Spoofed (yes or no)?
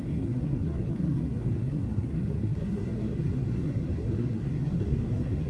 yes